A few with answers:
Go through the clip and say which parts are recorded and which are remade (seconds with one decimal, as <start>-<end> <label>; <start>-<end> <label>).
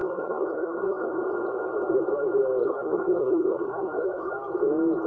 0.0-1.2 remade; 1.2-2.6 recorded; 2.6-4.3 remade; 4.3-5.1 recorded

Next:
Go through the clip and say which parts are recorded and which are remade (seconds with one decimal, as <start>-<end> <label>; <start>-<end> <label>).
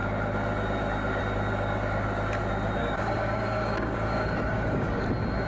0.0-2.8 recorded; 2.8-5.0 remade; 5.0-5.5 recorded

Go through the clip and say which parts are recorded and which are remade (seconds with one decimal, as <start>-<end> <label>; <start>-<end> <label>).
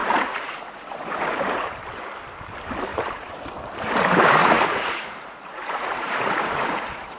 0.0-1.8 remade; 1.8-2.9 recorded; 2.9-3.4 remade; 3.4-4.4 recorded; 4.4-7.2 remade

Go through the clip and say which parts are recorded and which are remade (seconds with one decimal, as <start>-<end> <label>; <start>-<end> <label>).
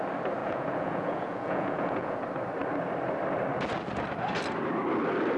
0.0-0.4 recorded; 0.4-2.2 remade; 2.2-5.4 recorded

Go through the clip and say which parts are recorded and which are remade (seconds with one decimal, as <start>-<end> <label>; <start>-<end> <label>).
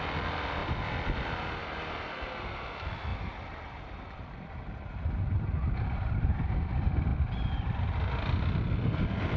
0.0-0.6 recorded; 0.6-1.6 remade; 1.6-7.1 recorded; 7.1-8.0 remade; 8.0-9.4 recorded